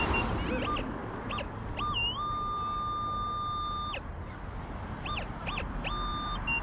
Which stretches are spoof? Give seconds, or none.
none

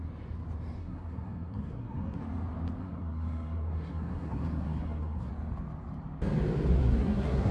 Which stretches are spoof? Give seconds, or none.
0.8-2.2; 2.8-5.3; 6.8-7.5

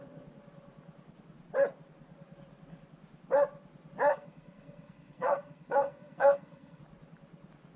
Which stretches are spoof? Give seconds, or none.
4.1-6.8

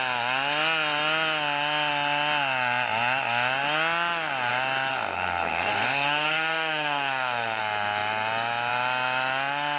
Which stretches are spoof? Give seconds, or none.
4.9-7.6

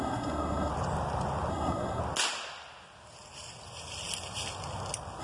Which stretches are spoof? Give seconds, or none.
0.0-0.7; 1.5-2.0

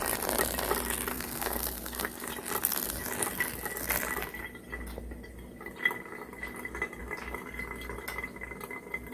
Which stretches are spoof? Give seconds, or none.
1.1-2.3